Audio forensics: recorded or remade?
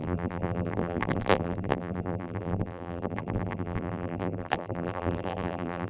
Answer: remade